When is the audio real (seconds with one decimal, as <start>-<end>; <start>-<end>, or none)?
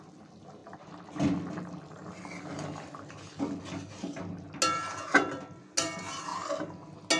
0.0-7.2